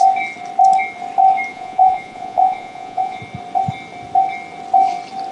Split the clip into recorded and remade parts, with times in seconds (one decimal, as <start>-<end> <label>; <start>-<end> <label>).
0.0-1.5 recorded; 1.5-3.2 remade; 3.2-5.3 recorded